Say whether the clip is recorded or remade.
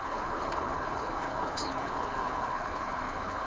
remade